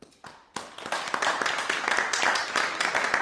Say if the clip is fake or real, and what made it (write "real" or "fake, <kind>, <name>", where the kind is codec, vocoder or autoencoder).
fake, vocoder, BigVGAN v2